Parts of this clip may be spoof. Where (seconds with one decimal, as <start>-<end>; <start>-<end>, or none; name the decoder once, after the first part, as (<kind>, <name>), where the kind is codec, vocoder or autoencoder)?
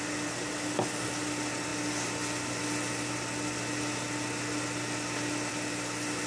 none